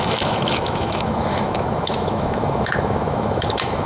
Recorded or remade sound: remade